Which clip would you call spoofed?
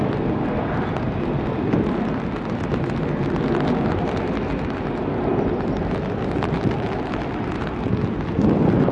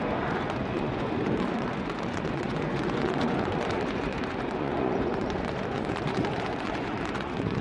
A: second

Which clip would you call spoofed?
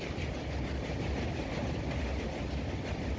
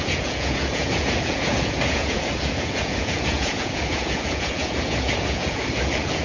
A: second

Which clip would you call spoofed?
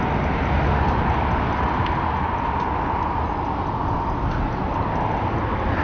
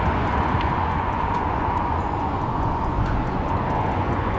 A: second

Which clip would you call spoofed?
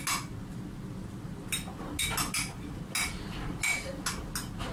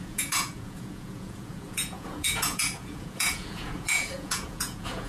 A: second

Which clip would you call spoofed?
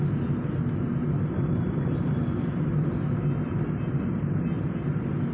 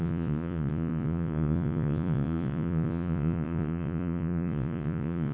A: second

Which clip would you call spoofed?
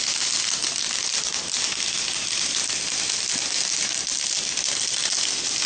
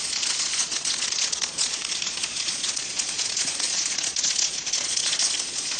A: second